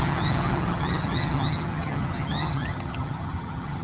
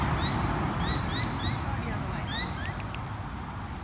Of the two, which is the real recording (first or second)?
second